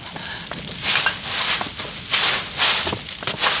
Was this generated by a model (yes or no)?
no